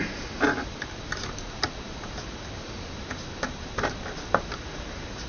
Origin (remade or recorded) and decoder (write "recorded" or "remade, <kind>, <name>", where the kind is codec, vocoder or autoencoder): recorded